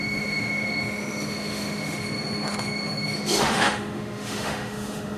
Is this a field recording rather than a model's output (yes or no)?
no